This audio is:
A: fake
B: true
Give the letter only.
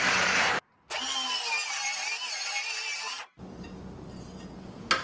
B